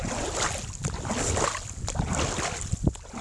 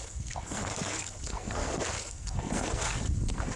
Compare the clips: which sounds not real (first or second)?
second